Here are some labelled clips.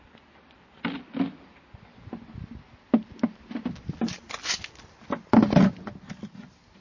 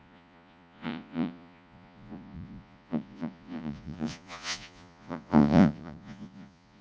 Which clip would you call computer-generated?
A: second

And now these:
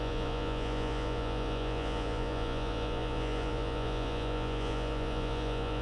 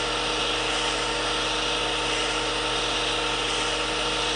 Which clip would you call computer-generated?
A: first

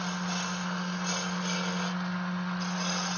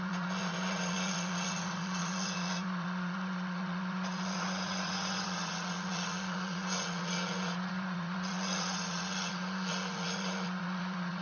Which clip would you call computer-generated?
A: second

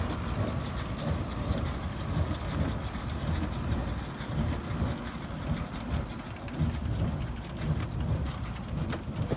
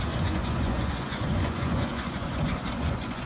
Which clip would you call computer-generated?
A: second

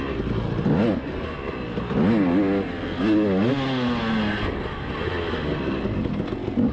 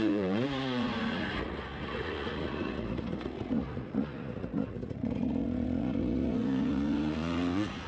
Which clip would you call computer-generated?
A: second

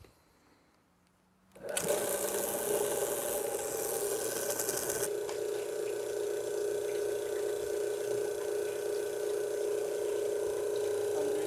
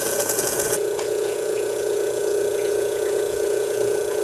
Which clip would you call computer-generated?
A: second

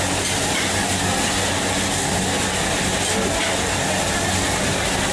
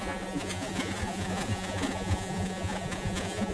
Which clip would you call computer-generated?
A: second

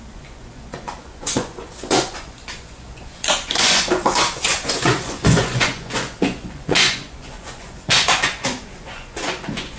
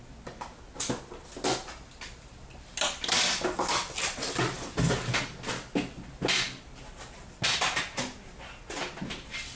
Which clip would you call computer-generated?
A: first